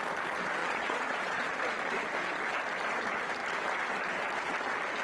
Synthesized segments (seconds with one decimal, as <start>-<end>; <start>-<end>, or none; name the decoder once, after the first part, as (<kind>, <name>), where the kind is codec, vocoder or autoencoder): 0.6-1.6 (vocoder, Vocos)